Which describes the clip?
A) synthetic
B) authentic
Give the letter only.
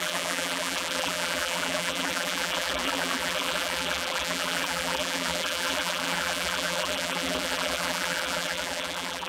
A